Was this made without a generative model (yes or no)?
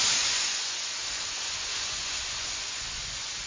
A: no